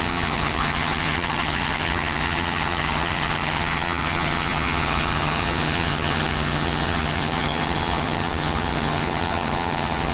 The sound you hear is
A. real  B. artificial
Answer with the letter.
B